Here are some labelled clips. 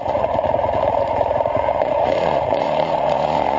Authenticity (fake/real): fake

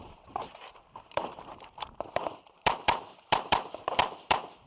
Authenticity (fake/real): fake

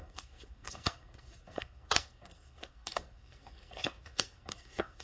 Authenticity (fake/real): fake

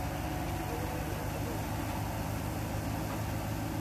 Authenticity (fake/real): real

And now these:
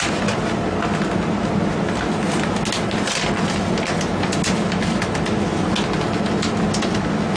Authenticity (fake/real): real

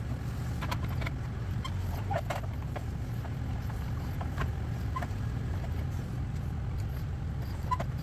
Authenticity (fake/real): fake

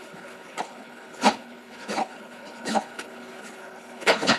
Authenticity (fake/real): fake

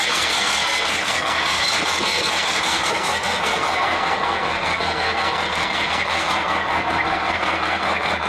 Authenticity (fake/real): fake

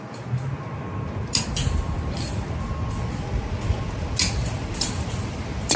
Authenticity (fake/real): real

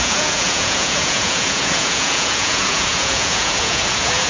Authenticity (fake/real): fake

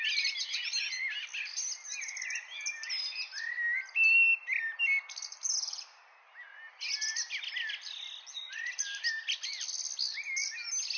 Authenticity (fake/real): real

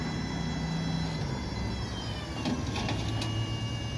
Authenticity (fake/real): real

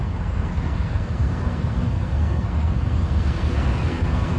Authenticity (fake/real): fake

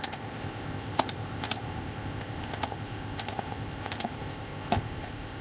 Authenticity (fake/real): fake